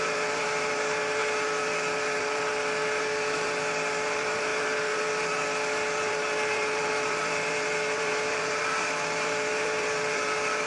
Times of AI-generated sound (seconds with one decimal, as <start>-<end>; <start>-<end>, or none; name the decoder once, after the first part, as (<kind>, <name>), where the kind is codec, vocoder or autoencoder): 0.0-10.7 (vocoder, BigVGAN v2)

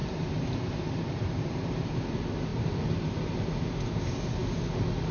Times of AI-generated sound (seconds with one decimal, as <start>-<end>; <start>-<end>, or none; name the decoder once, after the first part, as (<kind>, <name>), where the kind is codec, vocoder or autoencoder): 0.0-2.1 (vocoder, BigVGAN v2); 2.5-4.0

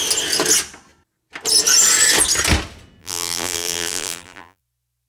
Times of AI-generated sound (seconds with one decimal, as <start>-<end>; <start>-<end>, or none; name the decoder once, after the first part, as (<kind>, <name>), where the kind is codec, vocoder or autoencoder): 3.0-4.6 (vocoder, BigVGAN v2)

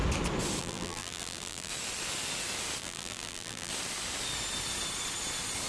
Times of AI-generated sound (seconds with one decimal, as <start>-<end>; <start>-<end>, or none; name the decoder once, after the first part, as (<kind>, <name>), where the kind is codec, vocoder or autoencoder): 0.6-1.7 (vocoder, BigVGAN v2); 2.8-3.7